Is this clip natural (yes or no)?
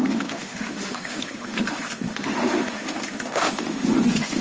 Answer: no